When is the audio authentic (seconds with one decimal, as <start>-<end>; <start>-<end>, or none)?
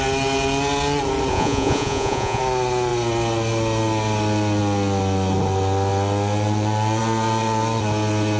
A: 0.0-1.3; 2.4-8.4